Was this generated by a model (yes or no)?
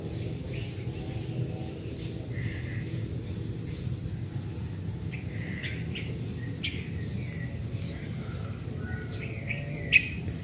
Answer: no